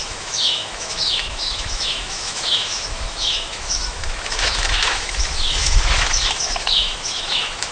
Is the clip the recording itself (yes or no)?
no